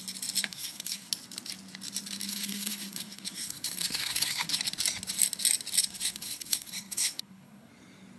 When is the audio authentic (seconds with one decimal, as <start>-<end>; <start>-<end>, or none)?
0.0-0.4; 1.1-2.3; 4.6-5.8; 7.7-8.2